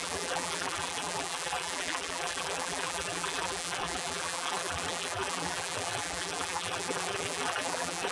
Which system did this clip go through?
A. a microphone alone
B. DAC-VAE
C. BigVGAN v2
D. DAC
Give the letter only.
C